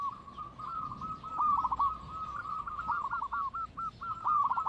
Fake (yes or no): no